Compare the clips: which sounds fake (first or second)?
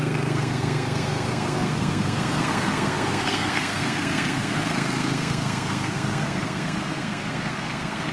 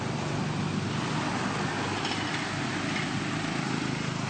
first